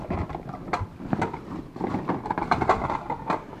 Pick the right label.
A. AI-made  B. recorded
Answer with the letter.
B